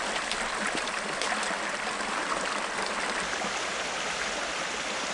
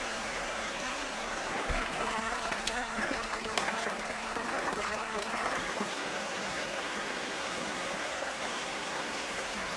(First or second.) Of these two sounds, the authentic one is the first